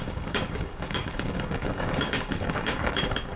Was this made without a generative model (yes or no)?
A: no